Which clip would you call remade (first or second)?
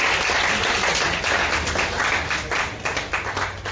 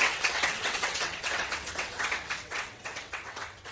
second